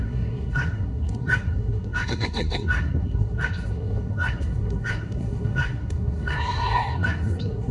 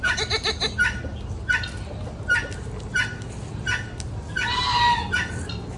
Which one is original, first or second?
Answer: second